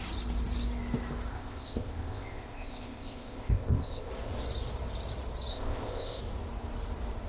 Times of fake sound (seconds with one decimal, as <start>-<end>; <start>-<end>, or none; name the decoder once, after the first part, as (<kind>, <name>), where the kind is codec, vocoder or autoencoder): 1.3-4.1 (codec, ZipCodec); 5.5-6.2